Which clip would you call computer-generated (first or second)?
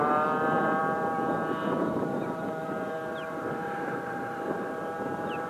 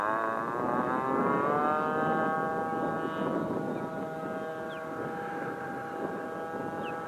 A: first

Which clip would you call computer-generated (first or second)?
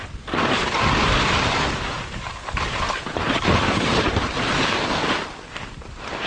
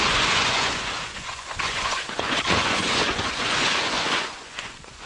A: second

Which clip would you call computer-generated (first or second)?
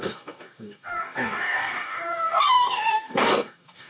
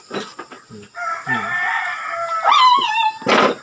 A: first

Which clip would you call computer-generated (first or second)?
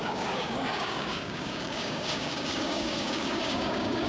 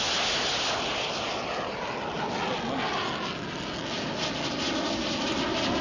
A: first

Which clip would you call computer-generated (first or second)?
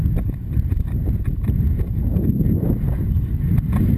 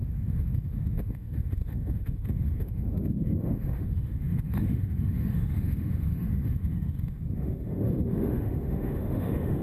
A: second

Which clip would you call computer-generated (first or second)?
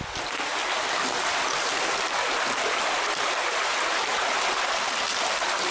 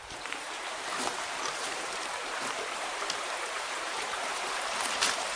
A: second